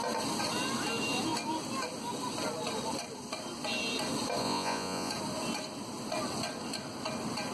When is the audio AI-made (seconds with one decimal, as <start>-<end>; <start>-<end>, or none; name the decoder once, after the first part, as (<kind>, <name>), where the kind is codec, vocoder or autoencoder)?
4.4-5.1 (vocoder, Vocos)

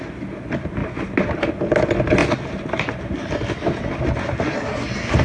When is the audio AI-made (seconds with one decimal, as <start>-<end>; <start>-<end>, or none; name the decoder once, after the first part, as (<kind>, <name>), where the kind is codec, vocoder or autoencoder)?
none